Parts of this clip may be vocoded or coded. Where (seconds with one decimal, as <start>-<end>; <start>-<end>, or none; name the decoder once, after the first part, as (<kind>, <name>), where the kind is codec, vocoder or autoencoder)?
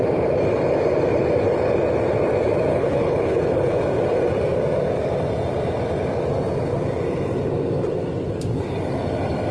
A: 2.7-3.8 (codec, HILCodec)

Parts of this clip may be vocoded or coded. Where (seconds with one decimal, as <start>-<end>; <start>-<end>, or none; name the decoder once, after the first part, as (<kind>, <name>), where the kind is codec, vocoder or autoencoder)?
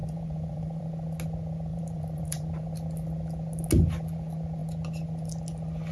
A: 0.0-0.8 (vocoder, BigVGAN v2); 1.7-2.6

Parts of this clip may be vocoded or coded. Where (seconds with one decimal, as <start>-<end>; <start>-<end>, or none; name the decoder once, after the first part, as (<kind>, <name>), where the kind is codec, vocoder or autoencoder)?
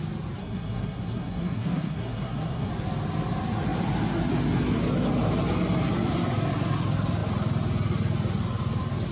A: 0.4-2.7 (codec, SNAC)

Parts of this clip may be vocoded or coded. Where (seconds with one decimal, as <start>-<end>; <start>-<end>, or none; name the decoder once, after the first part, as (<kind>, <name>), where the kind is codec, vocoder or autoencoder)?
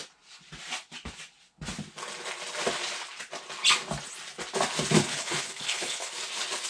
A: 5.1-6.1 (codec, HILCodec)